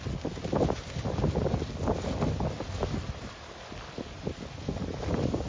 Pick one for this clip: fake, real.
real